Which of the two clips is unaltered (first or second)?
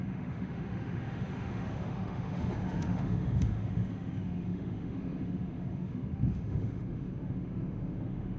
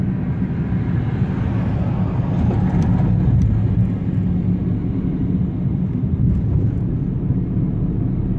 second